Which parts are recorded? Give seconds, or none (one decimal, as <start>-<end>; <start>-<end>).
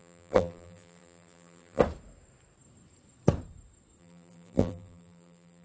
1.8-4.0